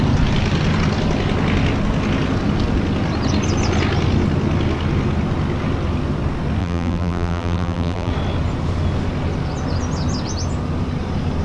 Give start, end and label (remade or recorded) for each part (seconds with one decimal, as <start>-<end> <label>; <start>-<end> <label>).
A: 0.0-6.6 recorded; 6.6-8.1 remade; 8.1-11.4 recorded